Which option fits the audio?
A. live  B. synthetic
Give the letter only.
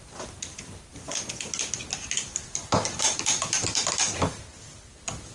A